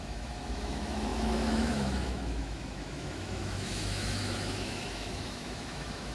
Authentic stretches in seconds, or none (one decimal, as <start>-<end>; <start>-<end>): none